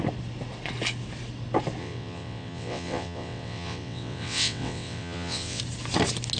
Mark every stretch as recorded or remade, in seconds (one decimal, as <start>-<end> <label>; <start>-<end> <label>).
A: 0.0-1.8 recorded; 1.8-5.6 remade; 5.6-6.4 recorded